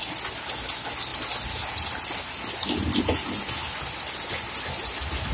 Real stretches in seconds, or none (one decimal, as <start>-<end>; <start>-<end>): 0.0-5.3

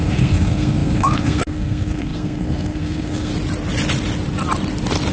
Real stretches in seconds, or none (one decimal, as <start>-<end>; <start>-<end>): 3.3-5.1

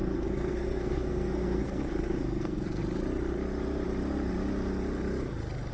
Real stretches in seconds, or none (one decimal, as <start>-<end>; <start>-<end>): 2.8-5.7

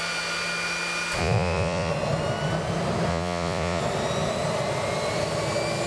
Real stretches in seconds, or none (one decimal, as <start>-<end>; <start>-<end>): 0.0-1.2; 1.9-3.1; 3.8-5.9

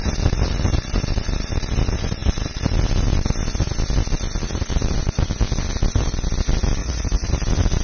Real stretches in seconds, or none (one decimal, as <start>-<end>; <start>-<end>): 0.0-6.8; 7.3-7.8

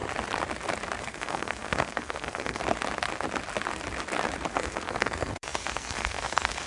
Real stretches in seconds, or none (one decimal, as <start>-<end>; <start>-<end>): 0.0-1.0; 2.6-4.5

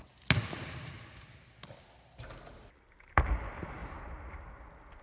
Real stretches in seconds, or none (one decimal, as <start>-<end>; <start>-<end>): 0.0-5.0

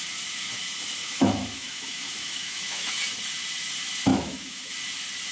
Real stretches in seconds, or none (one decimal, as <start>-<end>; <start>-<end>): 0.0-1.0; 3.0-4.1; 4.7-5.3